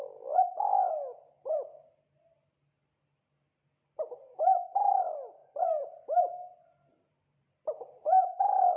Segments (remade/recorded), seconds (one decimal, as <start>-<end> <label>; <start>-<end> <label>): 0.0-5.4 recorded; 5.4-8.4 remade; 8.4-8.8 recorded